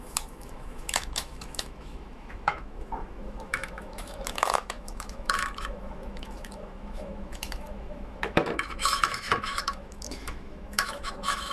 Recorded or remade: remade